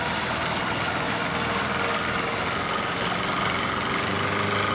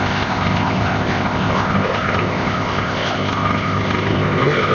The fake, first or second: second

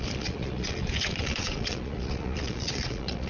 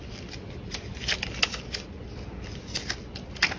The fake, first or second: first